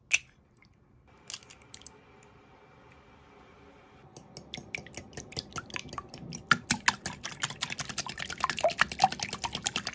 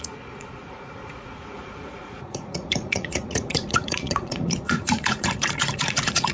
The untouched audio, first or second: first